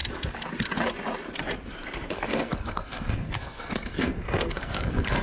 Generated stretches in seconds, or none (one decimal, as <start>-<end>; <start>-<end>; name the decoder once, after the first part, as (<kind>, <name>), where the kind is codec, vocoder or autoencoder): 2.1-5.2 (codec, SNAC)